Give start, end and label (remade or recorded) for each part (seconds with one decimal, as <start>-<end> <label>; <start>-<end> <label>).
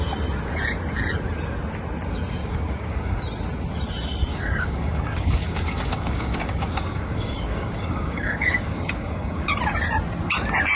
0.0-2.4 recorded; 2.4-3.2 remade; 3.2-4.3 recorded; 4.3-9.5 remade; 9.5-10.8 recorded